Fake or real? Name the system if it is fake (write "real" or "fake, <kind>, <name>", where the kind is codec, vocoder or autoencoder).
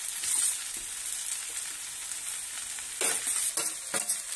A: real